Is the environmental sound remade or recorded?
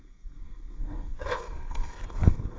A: remade